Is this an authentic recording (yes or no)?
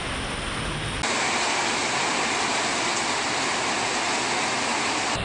yes